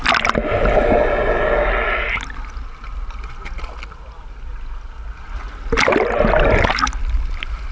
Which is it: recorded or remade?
recorded